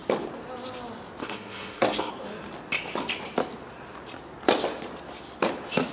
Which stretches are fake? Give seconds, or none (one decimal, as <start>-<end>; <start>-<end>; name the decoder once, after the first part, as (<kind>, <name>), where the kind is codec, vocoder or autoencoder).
1.2-2.1 (codec, SNAC)